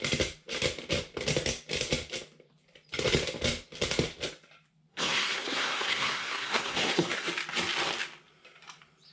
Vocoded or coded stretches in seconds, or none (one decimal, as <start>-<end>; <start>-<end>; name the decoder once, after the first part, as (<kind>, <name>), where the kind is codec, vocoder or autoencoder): 4.9-7.3 (codec, SNAC)